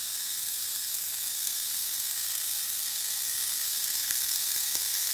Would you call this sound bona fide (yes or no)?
no